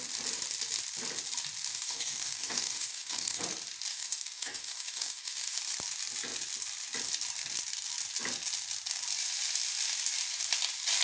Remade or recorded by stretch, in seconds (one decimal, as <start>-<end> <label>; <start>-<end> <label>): 0.0-1.7 recorded; 1.7-3.4 remade; 3.4-3.9 recorded; 3.9-5.6 remade; 5.6-11.0 recorded